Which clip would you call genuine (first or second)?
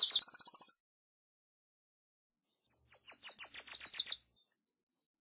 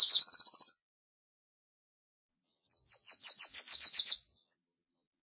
first